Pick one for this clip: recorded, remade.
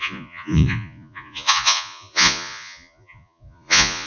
remade